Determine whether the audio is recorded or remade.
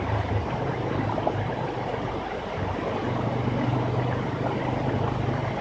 recorded